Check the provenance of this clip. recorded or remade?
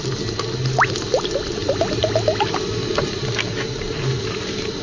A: recorded